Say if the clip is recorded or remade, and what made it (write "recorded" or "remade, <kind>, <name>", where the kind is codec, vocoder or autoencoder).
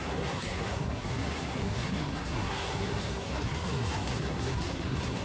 remade, codec, SNAC